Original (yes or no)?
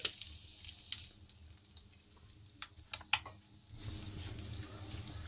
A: yes